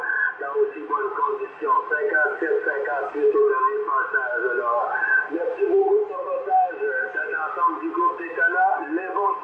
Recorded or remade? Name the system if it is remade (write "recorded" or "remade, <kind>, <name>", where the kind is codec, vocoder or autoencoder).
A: recorded